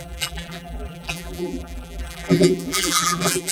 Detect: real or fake fake